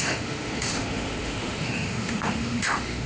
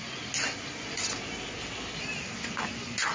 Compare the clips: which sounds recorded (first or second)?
second